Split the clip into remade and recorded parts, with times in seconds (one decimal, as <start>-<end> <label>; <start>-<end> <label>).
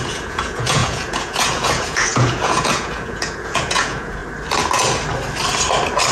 0.0-4.2 remade; 4.2-6.1 recorded